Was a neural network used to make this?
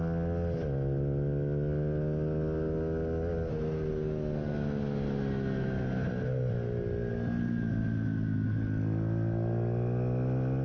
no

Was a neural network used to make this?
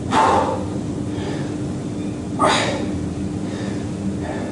no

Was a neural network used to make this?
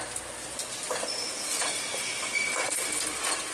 no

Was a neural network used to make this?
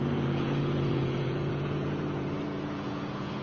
yes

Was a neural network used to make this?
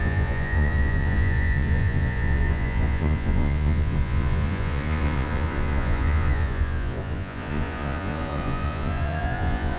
yes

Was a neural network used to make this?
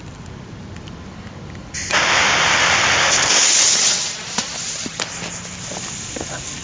no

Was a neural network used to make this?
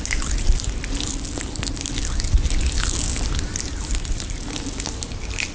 no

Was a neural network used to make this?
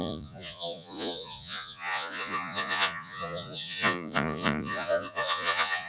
yes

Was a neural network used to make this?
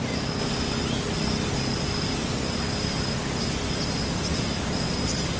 no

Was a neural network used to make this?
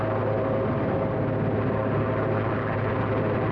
no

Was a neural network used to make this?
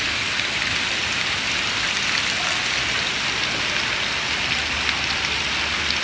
no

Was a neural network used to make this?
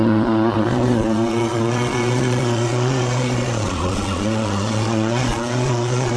yes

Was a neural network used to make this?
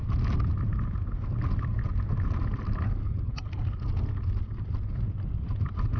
no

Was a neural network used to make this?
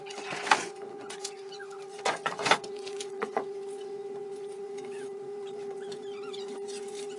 yes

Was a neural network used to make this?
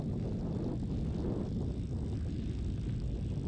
no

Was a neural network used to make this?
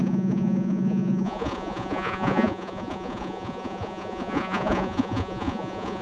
yes